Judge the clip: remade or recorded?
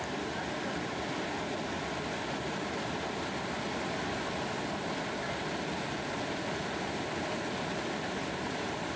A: recorded